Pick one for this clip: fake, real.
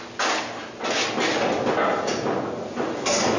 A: real